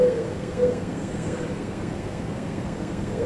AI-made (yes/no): yes